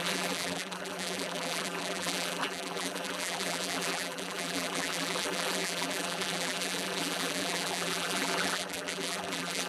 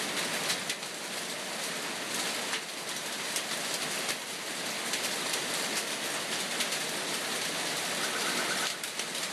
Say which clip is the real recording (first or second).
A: second